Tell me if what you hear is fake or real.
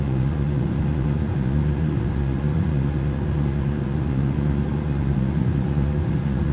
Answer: fake